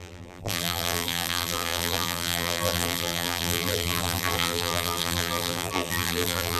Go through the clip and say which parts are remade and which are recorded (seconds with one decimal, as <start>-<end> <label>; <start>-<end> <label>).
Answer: 0.0-6.6 remade